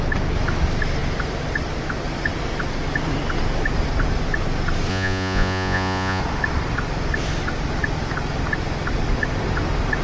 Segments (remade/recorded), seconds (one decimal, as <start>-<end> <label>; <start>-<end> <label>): 0.0-4.9 recorded; 4.9-6.2 remade; 6.2-10.0 recorded